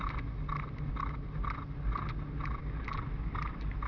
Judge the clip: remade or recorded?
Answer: recorded